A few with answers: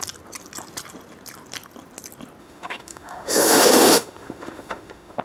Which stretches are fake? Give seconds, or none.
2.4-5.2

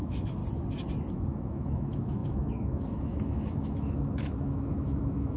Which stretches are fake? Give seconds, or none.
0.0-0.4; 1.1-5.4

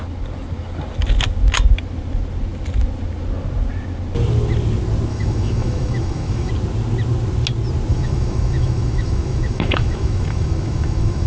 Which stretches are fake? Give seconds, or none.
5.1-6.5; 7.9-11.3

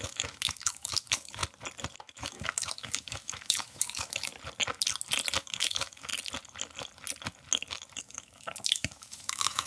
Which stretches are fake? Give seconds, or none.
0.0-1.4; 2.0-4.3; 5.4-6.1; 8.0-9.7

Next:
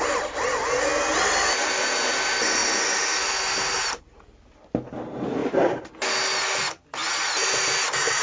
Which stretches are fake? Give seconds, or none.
none

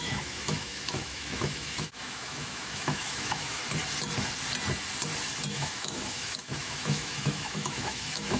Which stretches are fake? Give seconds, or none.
0.0-3.6; 5.5-8.4

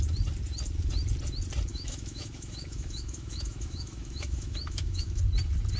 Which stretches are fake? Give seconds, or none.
1.7-5.2

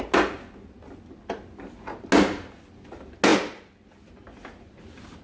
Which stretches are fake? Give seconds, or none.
none